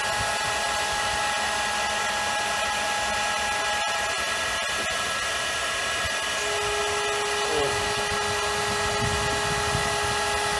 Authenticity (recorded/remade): recorded